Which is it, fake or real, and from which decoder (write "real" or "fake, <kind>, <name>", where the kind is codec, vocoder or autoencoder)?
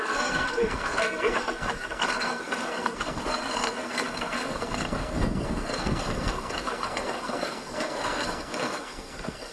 fake, codec, SNAC